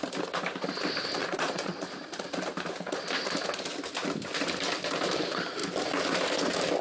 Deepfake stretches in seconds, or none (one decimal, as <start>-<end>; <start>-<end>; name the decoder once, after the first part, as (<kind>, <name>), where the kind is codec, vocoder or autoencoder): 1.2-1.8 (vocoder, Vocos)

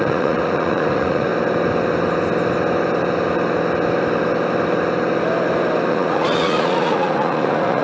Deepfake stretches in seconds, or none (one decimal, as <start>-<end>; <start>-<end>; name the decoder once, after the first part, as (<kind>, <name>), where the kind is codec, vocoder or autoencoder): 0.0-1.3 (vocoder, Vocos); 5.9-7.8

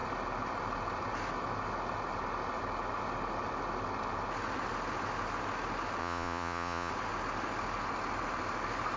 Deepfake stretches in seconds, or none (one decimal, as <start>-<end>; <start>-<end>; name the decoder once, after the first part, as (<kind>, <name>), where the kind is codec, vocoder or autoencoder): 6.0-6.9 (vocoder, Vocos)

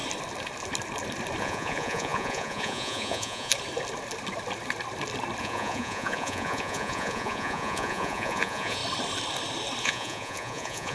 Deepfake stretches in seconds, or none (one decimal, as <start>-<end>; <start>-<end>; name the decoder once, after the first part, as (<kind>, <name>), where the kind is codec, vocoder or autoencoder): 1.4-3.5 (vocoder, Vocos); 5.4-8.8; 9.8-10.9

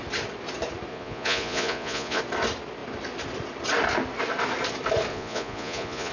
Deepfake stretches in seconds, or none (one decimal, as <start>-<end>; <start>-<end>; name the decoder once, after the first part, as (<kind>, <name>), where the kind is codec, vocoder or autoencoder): 0.9-2.2 (vocoder, Vocos); 5.1-6.1

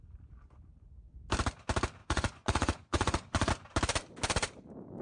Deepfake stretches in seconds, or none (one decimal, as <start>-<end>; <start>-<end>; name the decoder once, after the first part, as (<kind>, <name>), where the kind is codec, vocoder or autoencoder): 2.0-3.5 (vocoder, Vocos)